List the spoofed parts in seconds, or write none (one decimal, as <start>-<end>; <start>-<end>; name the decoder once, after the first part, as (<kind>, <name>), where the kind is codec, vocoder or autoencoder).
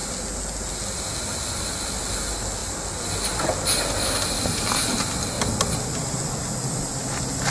none